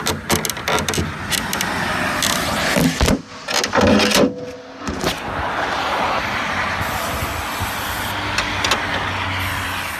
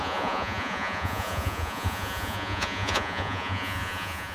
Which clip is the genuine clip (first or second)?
first